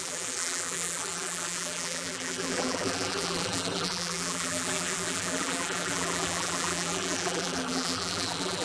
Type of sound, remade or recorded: remade